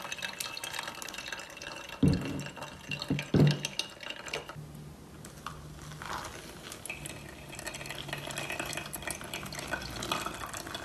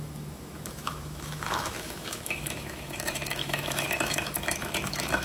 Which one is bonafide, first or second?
first